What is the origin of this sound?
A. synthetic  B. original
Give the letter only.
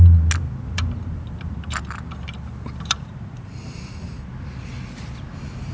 B